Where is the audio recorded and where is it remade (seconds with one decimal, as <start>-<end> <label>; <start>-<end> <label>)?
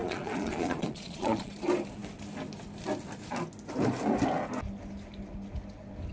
0.0-1.5 remade; 1.5-6.1 recorded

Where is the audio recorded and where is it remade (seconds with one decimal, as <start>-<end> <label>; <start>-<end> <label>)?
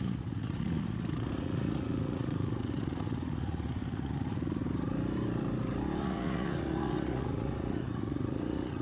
0.0-4.6 remade; 4.6-6.0 recorded; 6.0-8.8 remade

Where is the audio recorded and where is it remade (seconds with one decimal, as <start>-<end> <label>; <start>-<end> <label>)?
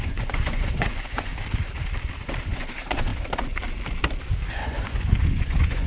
0.0-1.3 remade; 1.3-2.4 recorded; 2.4-3.1 remade; 3.1-4.5 recorded; 4.5-5.9 remade